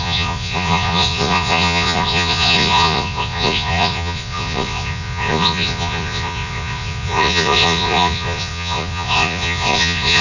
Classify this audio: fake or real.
fake